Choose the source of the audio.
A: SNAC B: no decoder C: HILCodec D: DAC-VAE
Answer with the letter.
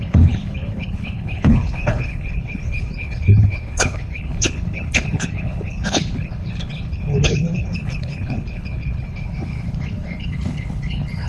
C